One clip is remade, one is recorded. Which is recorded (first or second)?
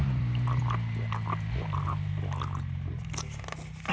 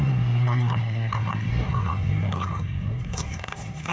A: first